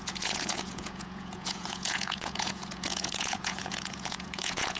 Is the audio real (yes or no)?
no